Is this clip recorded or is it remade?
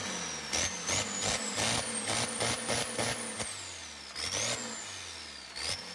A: recorded